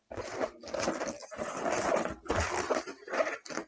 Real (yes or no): no